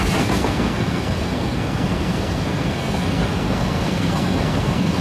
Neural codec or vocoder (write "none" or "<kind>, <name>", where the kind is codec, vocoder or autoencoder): codec, SNAC